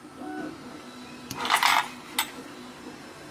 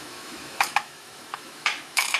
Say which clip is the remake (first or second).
second